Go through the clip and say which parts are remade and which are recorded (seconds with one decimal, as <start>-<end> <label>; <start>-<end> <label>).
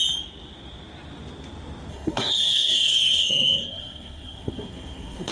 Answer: 0.0-1.9 recorded; 1.9-5.3 remade